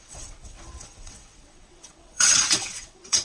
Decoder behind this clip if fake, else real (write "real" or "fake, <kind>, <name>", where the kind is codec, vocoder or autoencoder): fake, vocoder, WaveNeXt